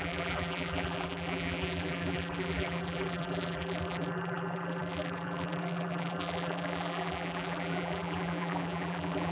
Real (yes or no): no